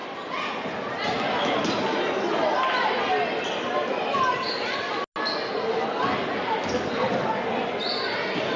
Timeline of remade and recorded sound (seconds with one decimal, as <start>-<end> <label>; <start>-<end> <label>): 0.0-8.6 recorded